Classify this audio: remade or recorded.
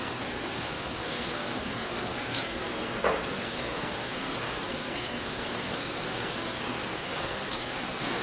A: remade